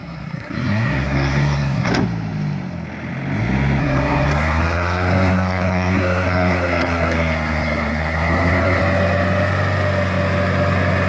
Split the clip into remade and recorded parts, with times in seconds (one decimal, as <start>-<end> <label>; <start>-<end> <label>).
0.0-1.9 remade; 1.9-3.8 recorded; 3.8-8.8 remade; 8.8-11.1 recorded